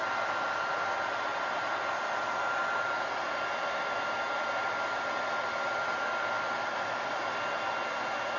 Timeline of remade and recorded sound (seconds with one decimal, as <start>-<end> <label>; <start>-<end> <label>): 0.0-8.4 recorded